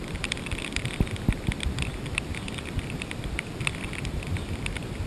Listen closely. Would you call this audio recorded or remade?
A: recorded